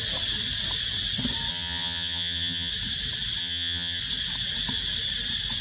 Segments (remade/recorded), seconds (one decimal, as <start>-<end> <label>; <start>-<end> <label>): 0.0-1.5 recorded; 1.5-2.7 remade; 2.7-3.4 recorded; 3.4-4.0 remade; 4.0-5.6 recorded